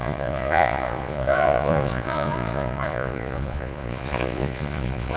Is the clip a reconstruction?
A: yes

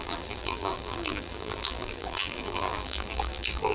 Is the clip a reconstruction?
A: yes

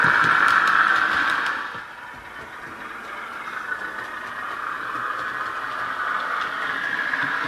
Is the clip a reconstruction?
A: no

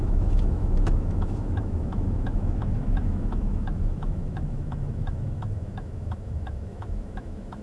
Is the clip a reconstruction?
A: yes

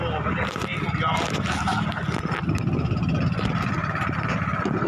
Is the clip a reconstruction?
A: no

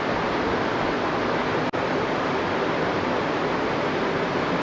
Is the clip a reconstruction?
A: no